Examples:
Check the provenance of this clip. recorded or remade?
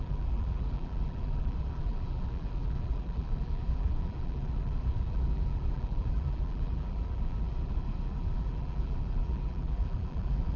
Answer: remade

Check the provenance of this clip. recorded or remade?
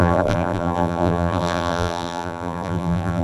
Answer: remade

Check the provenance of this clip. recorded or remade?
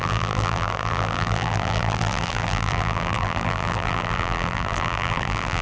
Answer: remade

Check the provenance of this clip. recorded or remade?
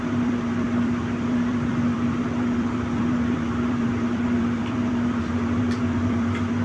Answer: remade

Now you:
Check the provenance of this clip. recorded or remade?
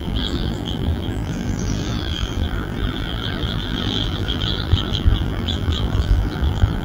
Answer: remade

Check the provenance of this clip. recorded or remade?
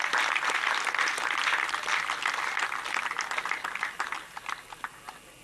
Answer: recorded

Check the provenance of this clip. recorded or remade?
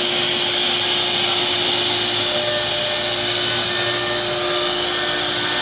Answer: recorded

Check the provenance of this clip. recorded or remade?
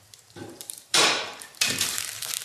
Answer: remade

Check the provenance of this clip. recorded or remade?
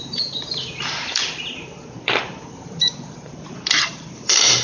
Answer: remade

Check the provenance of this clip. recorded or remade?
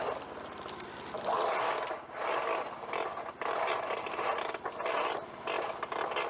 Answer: recorded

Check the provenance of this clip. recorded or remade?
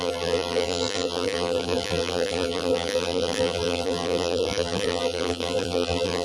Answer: remade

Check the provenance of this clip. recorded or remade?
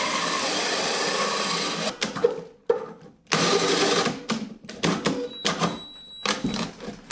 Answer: recorded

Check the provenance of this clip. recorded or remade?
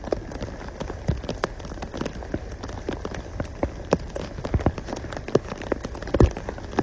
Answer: remade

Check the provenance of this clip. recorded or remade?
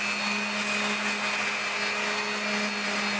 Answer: recorded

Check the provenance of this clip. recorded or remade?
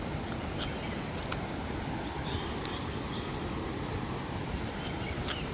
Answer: recorded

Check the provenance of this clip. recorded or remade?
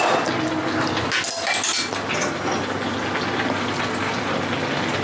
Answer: recorded